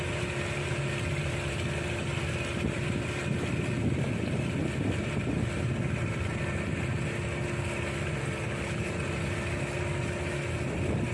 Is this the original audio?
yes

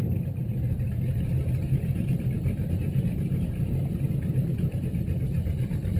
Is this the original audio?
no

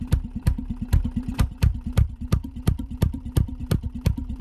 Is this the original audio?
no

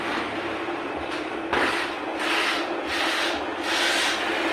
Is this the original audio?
no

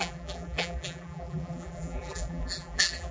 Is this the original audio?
no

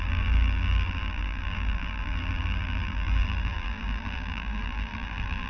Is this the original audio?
no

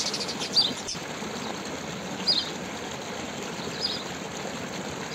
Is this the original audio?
yes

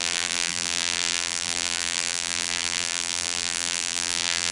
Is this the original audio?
no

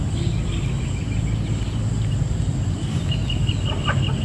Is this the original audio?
yes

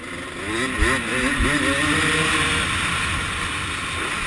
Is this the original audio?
yes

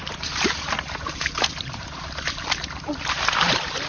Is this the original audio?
no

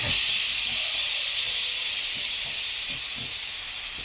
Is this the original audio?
no